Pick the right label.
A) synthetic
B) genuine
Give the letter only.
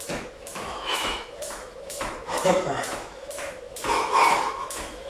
A